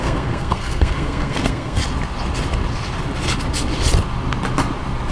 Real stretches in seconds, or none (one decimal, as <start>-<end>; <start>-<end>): 1.8-5.1